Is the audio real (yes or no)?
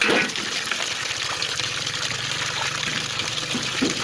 yes